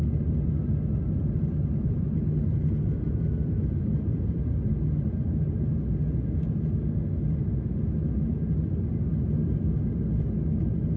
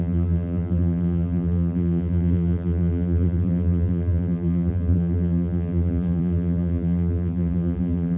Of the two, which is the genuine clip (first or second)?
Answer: first